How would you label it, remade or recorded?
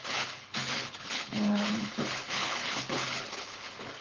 remade